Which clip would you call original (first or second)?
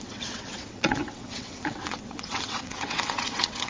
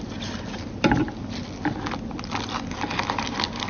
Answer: second